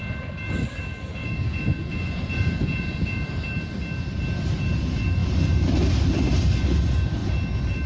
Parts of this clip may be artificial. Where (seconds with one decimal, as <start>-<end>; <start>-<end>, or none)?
1.1-3.3